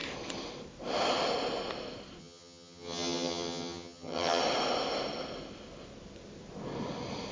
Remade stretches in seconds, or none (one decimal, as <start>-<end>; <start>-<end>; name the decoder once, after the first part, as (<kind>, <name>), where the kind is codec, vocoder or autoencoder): 2.2-4.4 (vocoder, HiFi-GAN)